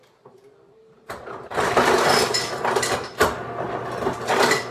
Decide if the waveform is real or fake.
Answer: real